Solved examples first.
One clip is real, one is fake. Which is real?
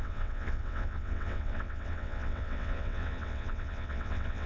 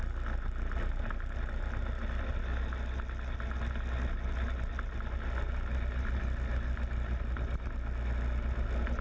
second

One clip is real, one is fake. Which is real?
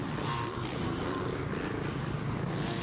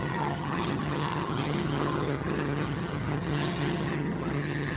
first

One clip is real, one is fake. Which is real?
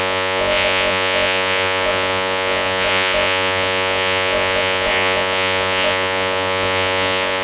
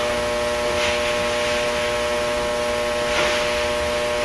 second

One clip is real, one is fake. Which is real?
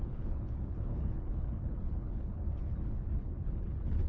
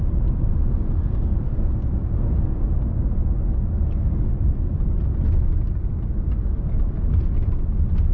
second